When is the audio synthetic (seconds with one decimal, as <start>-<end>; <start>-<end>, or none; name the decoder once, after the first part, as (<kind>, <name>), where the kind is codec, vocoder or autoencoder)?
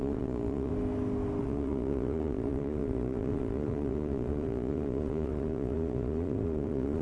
0.0-0.7 (vocoder, Vocos); 1.4-7.0